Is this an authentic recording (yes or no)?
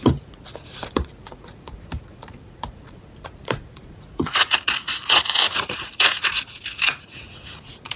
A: no